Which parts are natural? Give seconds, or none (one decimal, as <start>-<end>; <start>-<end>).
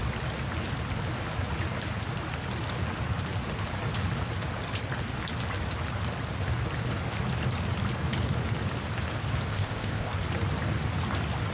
0.0-9.5; 10.1-11.5